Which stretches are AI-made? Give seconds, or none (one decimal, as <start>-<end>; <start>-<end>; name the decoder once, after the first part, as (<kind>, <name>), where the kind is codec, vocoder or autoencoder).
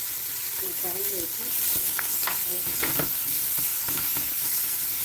1.8-5.0 (codec, SNAC)